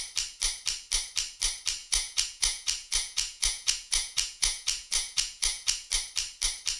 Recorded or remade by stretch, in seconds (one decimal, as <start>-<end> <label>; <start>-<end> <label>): 0.0-1.8 recorded; 1.8-5.9 remade; 5.9-6.8 recorded